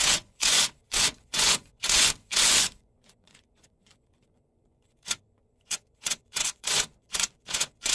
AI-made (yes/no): yes